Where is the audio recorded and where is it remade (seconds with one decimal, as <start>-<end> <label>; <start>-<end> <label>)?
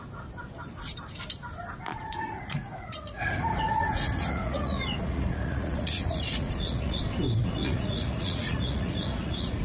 0.0-1.9 recorded; 1.9-7.0 remade; 7.0-7.4 recorded; 7.4-9.6 remade